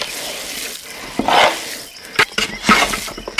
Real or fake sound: real